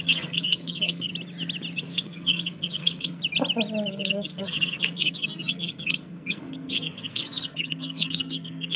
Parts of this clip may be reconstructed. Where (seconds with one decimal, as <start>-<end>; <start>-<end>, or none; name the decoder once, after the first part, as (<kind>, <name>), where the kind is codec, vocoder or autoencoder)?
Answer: 0.0-1.1 (codec, SNAC); 1.8-3.2; 3.9-8.8